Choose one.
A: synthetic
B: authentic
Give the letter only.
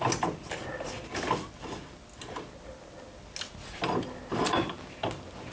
B